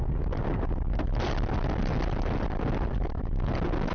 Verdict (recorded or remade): recorded